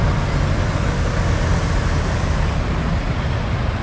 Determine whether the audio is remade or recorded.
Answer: recorded